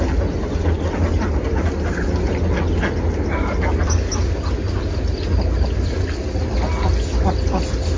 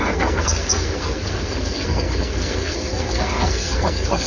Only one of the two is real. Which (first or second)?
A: first